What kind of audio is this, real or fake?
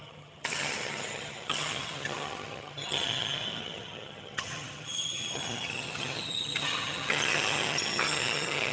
fake